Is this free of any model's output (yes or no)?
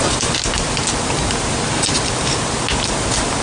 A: yes